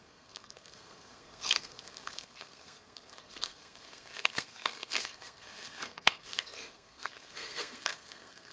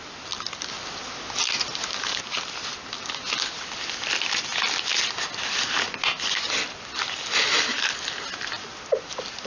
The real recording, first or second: second